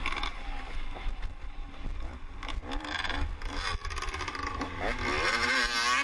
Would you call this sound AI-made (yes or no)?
no